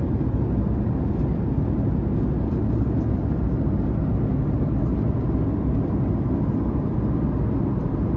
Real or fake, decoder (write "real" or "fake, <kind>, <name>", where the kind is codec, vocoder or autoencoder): real